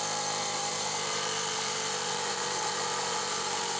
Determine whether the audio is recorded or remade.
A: remade